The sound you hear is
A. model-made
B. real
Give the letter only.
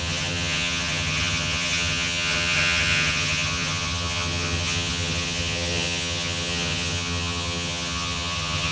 A